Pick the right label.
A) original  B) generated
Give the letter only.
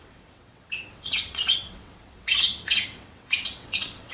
B